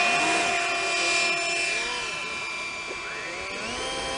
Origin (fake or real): real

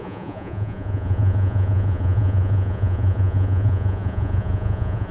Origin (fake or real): fake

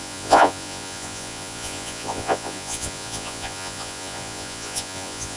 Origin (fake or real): fake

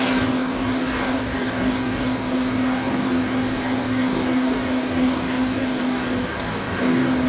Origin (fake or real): fake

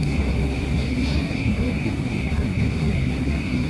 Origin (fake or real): fake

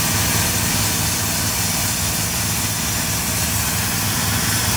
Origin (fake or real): real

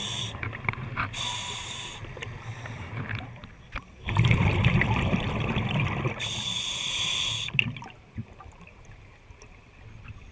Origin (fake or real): real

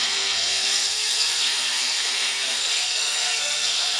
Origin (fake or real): fake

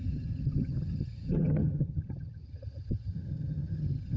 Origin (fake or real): fake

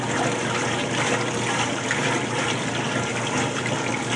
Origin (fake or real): real